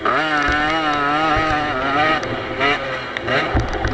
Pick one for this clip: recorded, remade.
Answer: recorded